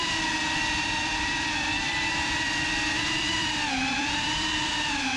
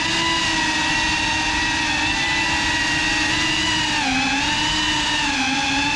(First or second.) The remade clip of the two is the first